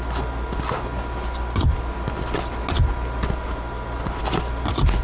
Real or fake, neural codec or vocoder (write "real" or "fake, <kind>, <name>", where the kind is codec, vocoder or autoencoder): real